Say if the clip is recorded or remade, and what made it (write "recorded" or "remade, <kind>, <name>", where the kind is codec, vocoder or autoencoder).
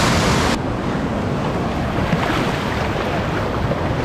recorded